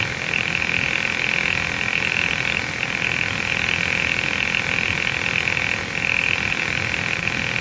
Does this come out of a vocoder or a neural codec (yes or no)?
no